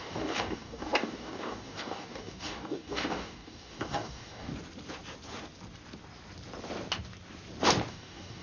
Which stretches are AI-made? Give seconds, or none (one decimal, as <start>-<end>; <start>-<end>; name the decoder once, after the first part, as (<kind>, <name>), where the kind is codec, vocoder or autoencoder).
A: 0.0-4.5 (codec, DAC); 7.9-8.4